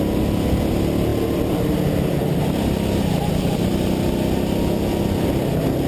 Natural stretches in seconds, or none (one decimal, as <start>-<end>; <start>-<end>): 0.0-5.9